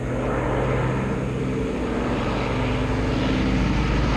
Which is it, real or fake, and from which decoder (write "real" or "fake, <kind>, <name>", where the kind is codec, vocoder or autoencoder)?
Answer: real